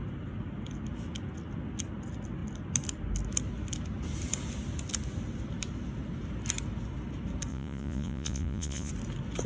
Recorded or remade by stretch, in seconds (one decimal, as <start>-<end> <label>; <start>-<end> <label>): 0.0-7.5 recorded; 7.5-8.9 remade; 8.9-9.5 recorded